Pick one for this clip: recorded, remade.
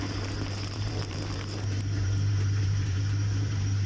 remade